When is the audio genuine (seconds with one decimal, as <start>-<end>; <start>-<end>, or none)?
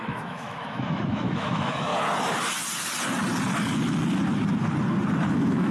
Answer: 1.9-5.3